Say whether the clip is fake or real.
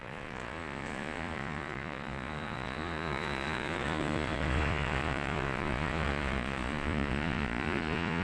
fake